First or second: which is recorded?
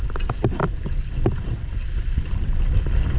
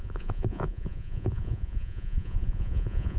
first